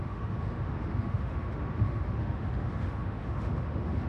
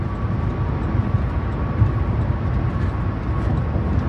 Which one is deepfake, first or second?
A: first